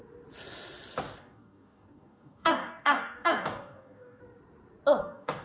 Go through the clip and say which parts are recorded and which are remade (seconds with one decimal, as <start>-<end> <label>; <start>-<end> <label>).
0.0-1.2 recorded; 1.2-4.2 remade; 4.2-5.0 recorded; 5.0-5.4 remade